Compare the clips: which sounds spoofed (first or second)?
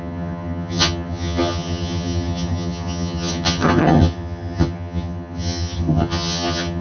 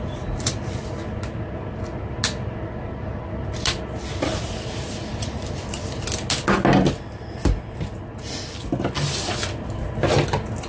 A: first